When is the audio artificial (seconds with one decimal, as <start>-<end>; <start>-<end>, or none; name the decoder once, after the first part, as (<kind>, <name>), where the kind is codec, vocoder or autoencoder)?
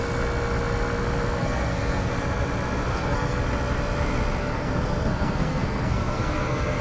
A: 1.4-2.1 (codec, SNAC); 2.9-3.4; 4.4-6.8